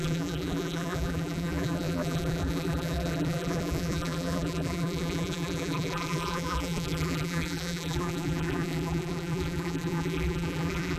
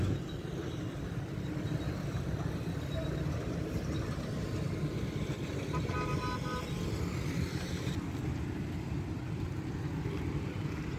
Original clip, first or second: second